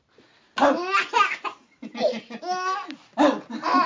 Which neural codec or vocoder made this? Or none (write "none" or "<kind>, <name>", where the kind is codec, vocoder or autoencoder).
none